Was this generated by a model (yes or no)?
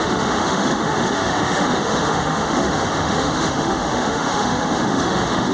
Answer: yes